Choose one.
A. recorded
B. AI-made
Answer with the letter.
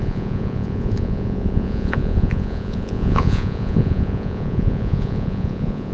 B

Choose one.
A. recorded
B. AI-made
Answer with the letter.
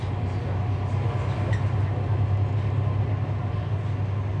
A